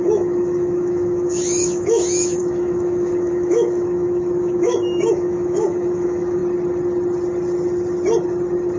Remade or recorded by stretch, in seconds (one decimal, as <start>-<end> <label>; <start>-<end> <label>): 0.0-6.4 remade; 6.4-8.8 recorded